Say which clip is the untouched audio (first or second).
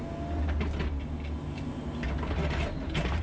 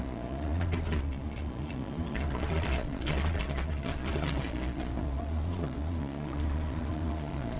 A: first